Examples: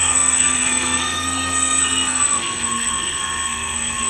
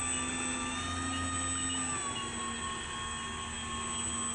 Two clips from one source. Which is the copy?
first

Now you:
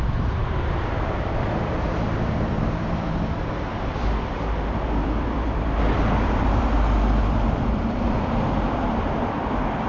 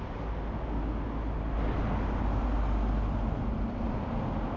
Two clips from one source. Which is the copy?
first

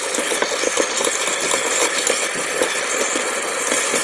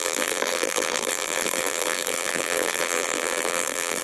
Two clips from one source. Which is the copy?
second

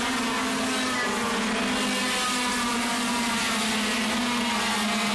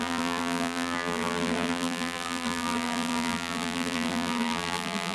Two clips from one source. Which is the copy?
second